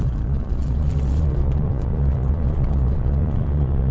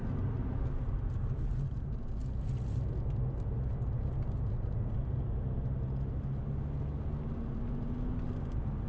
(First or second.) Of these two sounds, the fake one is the first